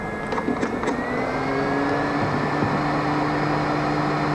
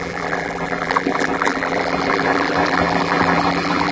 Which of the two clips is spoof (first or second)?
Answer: second